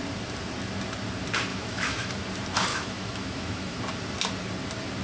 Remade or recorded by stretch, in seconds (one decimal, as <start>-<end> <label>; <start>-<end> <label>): 0.0-1.5 recorded; 1.5-2.1 remade; 2.1-2.7 recorded; 2.7-3.8 remade; 3.8-5.0 recorded